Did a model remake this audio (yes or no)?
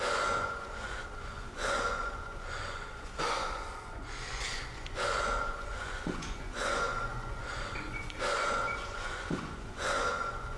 yes